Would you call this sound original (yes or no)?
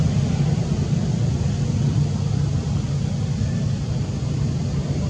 yes